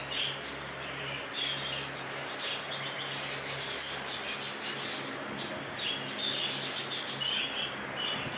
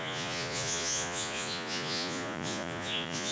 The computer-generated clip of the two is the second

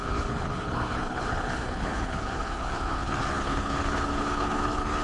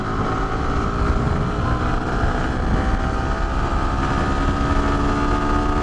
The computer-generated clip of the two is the first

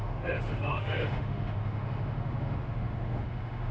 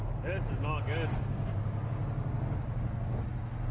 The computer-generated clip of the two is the first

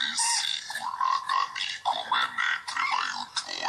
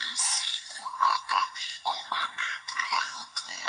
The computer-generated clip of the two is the second